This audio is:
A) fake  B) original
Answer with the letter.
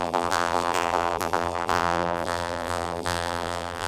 A